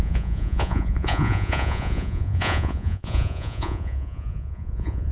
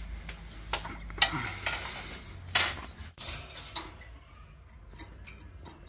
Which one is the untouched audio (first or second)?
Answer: second